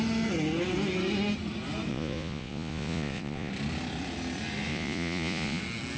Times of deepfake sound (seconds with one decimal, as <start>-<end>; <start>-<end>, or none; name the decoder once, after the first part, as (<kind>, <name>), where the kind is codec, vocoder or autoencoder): 1.9-3.5 (vocoder, Vocos); 4.7-5.6